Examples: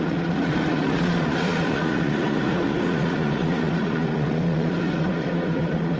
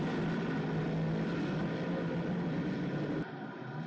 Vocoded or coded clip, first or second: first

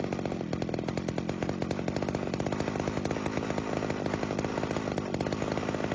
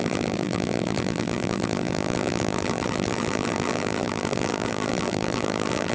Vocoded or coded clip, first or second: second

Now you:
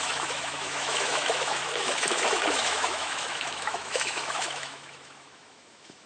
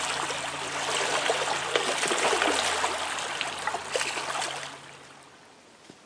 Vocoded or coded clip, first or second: first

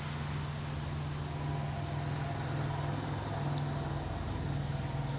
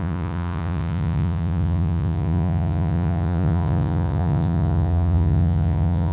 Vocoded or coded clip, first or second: second